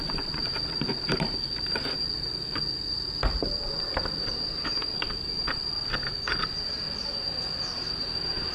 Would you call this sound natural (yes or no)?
no